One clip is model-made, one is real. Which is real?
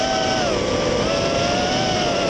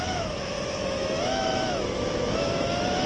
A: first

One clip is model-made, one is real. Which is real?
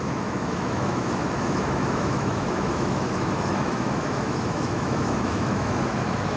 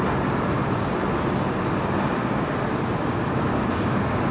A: second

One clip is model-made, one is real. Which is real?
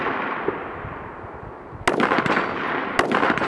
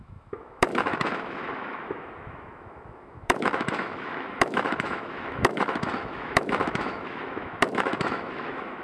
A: first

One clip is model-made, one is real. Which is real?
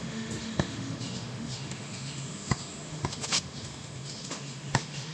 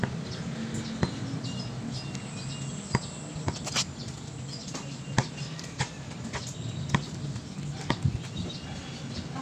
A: second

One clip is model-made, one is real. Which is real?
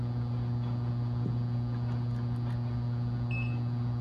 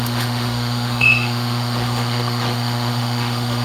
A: first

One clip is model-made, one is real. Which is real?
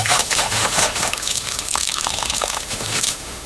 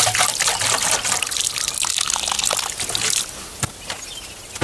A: second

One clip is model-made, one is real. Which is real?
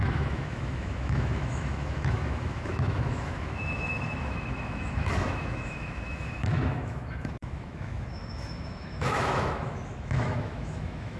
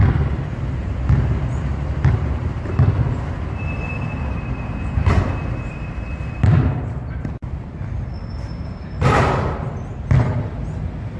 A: second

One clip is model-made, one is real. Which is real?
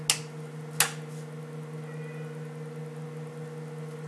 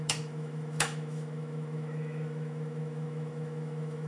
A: first